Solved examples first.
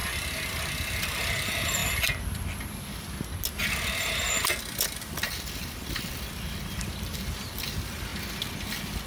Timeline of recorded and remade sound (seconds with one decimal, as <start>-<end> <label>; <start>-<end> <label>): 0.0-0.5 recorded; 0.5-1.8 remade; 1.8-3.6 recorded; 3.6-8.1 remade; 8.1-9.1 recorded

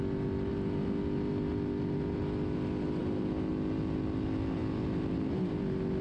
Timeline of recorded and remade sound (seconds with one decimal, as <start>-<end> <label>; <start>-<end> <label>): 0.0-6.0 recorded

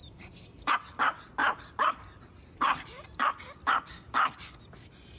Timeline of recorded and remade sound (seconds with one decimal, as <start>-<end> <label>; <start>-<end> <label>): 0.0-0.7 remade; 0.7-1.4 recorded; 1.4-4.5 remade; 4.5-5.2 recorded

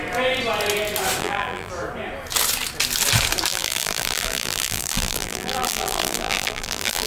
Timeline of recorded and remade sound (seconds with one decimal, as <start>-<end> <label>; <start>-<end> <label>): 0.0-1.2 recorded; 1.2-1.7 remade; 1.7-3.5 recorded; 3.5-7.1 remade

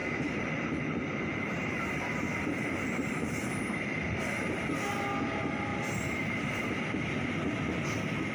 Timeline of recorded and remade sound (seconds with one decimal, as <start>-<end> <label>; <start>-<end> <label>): 0.0-4.6 remade; 4.6-8.3 recorded